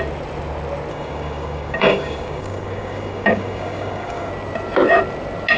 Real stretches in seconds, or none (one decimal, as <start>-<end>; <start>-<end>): 0.0-0.9; 4.3-5.6